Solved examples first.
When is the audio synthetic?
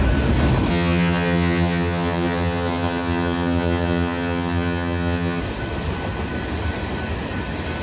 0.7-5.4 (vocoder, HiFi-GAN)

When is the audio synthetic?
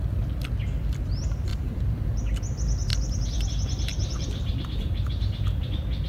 1.5-2.2 (vocoder, BigVGAN v2); 3.9-5.3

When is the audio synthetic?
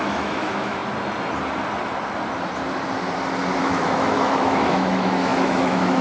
0.0-0.8 (autoencoder, DAC-VAE); 3.6-6.0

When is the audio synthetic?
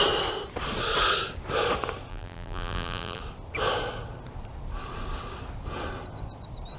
2.1-3.2 (vocoder, BigVGAN v2)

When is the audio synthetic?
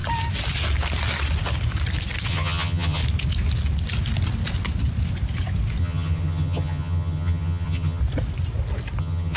2.3-3.0 (vocoder, HiFi-GAN); 5.8-8.0; 9.0-9.4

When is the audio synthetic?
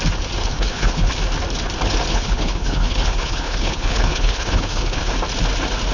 0.4-1.1 (codec, HILCodec); 2.1-5.1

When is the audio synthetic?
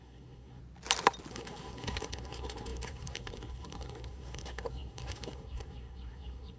0.0-0.6 (codec, SNAC); 1.3-6.6